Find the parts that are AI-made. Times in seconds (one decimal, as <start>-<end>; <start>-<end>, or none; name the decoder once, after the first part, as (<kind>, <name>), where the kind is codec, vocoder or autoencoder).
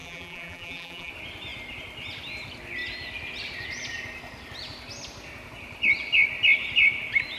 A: 0.0-1.1 (vocoder, BigVGAN v2)